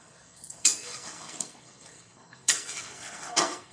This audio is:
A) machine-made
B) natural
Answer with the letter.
A